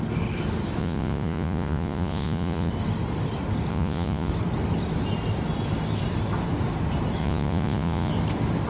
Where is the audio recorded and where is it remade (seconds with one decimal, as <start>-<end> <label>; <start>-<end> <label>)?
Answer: 0.0-0.8 recorded; 0.8-2.7 remade; 2.7-3.7 recorded; 3.7-4.3 remade; 4.3-7.2 recorded; 7.2-8.1 remade; 8.1-8.7 recorded